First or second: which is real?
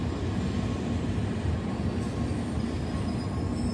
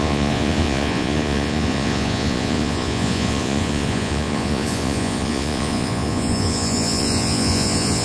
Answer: first